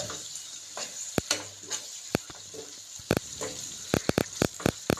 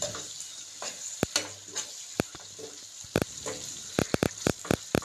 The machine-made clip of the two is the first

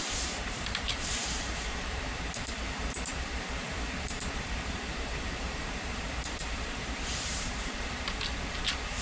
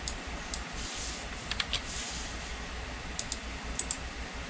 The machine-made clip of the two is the first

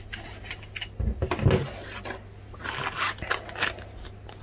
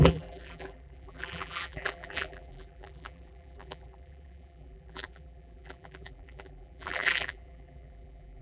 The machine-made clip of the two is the second